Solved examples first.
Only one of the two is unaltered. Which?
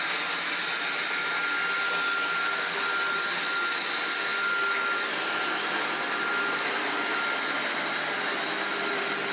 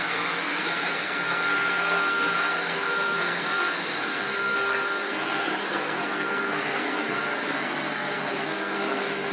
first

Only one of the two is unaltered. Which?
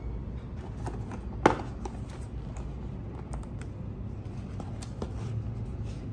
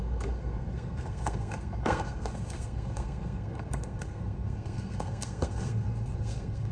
first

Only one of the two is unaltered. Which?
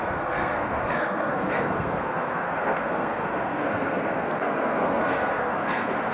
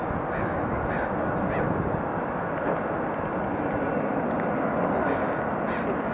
second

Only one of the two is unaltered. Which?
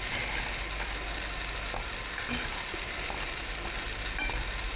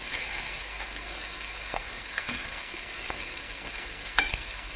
first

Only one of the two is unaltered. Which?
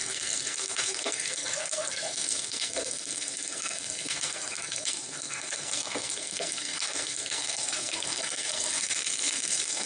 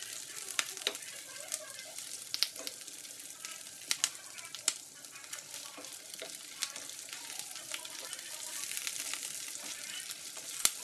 second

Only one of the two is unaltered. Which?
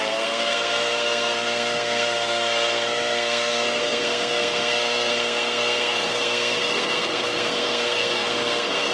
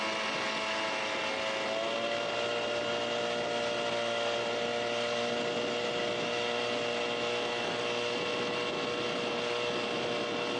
second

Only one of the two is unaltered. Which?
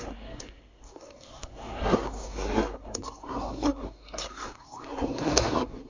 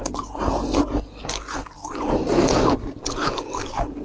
second